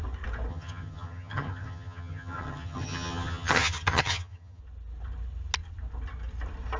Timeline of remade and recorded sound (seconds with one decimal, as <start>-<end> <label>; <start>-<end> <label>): 0.0-0.5 recorded; 0.5-4.6 remade; 4.6-6.8 recorded